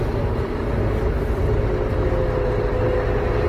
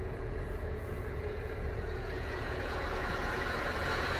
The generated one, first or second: second